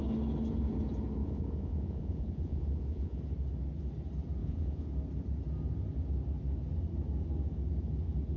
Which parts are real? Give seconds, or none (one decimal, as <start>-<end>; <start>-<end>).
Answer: 0.0-1.2; 3.2-4.4; 4.9-8.4